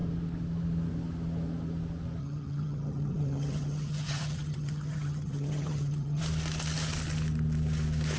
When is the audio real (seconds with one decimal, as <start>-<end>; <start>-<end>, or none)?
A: 0.0-2.2; 6.2-8.2